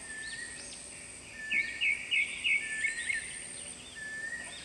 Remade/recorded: recorded